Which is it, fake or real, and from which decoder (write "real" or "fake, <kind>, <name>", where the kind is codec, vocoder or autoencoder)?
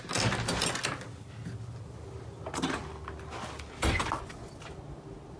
real